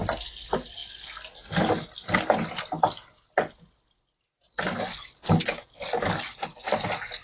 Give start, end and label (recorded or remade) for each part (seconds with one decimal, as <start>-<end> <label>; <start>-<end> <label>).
0.0-7.2 recorded